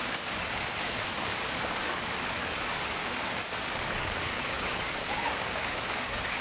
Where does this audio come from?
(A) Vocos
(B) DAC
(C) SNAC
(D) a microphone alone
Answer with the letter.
B